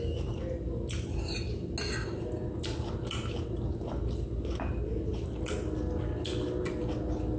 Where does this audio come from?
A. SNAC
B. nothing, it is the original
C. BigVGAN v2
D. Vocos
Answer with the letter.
B